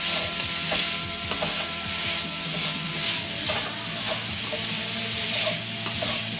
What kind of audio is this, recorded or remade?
recorded